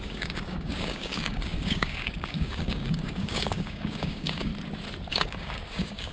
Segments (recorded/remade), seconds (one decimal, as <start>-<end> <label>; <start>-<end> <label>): 0.0-4.5 remade; 4.5-5.1 recorded; 5.1-6.1 remade